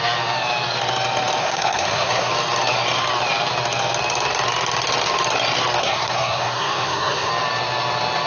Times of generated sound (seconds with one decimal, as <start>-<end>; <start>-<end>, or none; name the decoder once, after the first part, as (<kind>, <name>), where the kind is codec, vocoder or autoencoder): 1.4-2.3 (codec, SNAC); 5.8-7.3